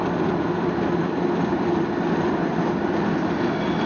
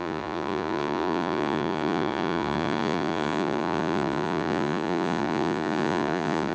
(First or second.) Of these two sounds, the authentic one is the first